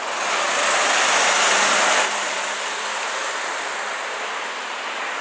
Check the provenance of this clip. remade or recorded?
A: recorded